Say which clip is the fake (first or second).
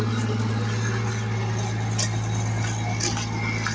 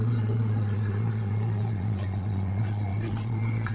second